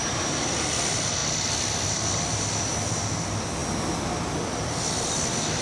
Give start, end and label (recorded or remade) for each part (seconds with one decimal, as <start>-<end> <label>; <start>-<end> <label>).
0.0-5.6 recorded